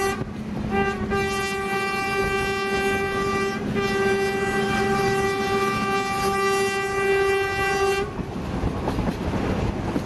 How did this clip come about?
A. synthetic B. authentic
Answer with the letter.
B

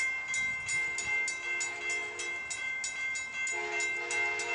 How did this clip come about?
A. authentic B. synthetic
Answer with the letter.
A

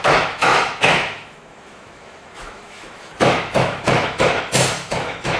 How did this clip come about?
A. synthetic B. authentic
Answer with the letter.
A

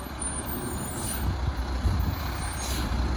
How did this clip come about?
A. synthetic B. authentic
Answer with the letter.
B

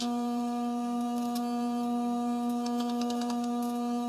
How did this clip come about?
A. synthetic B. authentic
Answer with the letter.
A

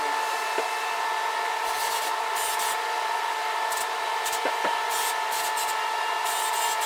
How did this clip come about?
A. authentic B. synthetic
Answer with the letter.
A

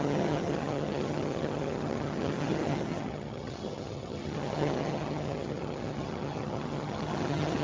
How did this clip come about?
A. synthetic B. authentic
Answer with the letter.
A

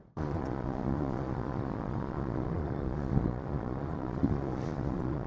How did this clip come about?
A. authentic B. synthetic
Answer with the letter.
B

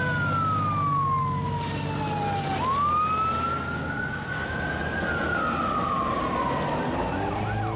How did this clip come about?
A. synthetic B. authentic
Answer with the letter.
B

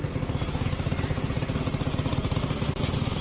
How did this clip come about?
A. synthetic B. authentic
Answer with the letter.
B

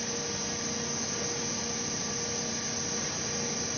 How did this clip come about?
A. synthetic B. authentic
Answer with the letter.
B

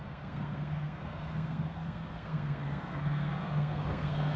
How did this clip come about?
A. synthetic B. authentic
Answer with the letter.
A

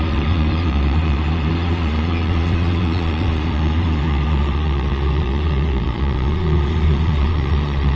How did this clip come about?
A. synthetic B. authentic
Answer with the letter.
A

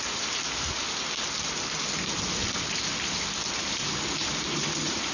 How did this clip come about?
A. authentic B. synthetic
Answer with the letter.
A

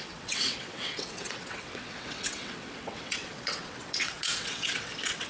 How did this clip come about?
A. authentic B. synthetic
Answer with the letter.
B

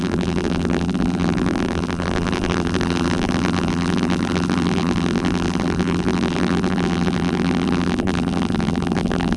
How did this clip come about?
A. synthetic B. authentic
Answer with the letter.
A